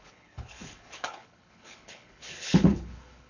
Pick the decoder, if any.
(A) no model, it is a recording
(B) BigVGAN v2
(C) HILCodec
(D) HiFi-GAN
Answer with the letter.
C